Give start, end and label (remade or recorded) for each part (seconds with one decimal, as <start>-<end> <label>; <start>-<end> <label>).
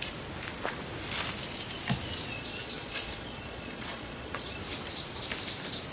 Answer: 0.0-2.3 recorded; 2.3-4.6 remade; 4.6-5.9 recorded